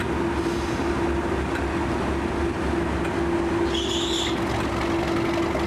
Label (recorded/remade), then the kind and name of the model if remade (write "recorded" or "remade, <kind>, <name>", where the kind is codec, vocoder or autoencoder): recorded